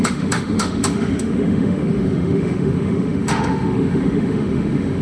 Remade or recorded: remade